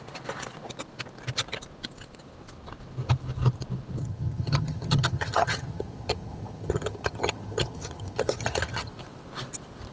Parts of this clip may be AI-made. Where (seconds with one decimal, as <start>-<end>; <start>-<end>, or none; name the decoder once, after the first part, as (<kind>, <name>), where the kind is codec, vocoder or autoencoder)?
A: 4.0-8.9 (vocoder, HiFi-GAN)